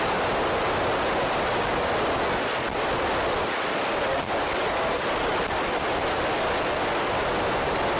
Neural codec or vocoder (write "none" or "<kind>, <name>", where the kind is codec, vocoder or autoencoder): none